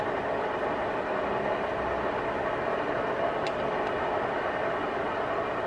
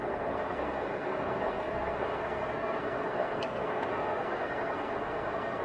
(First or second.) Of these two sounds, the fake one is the second